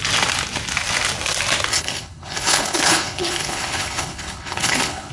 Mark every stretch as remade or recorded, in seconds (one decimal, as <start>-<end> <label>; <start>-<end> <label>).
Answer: 0.0-1.7 recorded; 1.7-5.1 remade

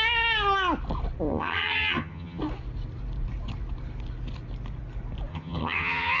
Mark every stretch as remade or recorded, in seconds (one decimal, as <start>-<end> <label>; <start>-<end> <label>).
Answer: 0.0-1.3 recorded; 1.3-2.4 remade; 2.4-5.3 recorded; 5.3-6.2 remade

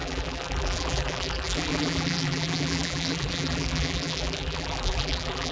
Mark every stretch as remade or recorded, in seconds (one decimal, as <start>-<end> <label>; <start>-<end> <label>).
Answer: 0.0-5.5 remade

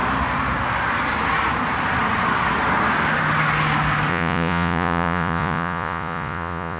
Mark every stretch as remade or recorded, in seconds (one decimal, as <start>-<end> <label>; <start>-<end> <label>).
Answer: 0.0-4.1 recorded; 4.1-6.8 remade

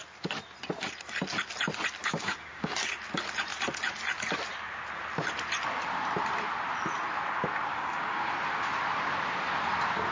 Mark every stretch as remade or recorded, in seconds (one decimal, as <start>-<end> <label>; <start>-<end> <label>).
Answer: 0.0-2.0 recorded; 2.0-2.7 remade; 2.7-7.7 recorded; 7.7-8.3 remade; 8.3-10.1 recorded

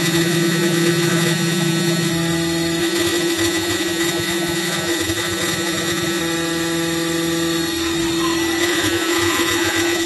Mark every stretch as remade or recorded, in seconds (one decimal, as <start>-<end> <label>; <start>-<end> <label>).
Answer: 0.0-2.1 remade; 2.1-2.8 recorded; 2.8-6.2 remade; 6.2-8.6 recorded; 8.6-10.1 remade